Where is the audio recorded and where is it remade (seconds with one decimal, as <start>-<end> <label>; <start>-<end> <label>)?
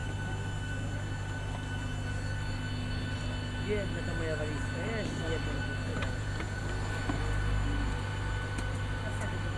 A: 0.0-5.9 recorded; 5.9-6.6 remade; 6.6-9.6 recorded